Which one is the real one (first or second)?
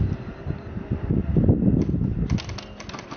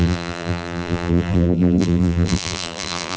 first